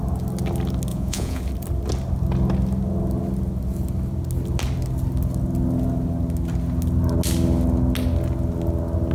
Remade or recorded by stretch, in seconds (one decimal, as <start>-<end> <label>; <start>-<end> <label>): 0.0-0.9 recorded; 0.9-1.4 remade; 1.4-9.1 recorded